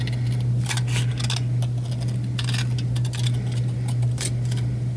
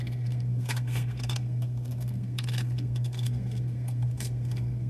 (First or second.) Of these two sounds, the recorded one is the first